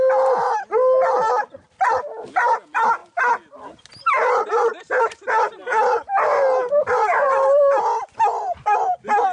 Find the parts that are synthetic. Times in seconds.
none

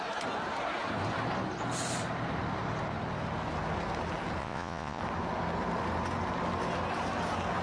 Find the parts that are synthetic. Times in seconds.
4.4-5.0 (vocoder, Vocos)

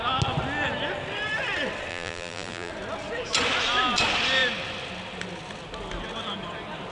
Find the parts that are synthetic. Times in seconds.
1.9-2.7 (vocoder, BigVGAN v2)

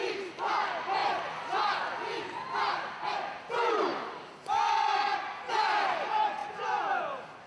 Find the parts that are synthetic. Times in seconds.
6.4-7.0 (vocoder, BigVGAN v2)

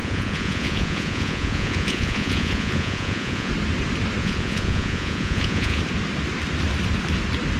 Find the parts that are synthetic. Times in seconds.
0.0-3.5 (vocoder, Vocos); 4.2-5.8

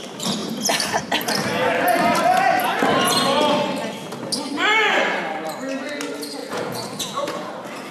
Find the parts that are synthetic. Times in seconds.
6.4-7.5 (vocoder, Vocos)

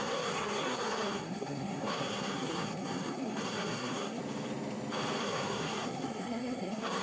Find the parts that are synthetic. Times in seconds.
0.0-4.2 (codec, SNAC); 5.2-7.0

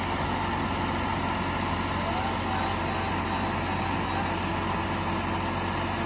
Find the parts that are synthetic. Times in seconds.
none